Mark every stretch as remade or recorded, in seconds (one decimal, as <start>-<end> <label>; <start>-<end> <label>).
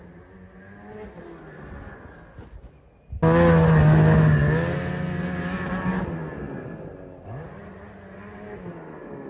0.0-9.3 recorded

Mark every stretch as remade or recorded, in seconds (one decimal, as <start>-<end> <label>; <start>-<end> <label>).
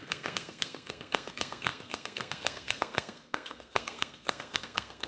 0.0-5.1 remade